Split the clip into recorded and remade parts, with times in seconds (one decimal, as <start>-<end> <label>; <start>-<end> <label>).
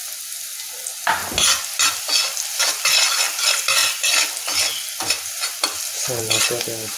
0.0-7.0 recorded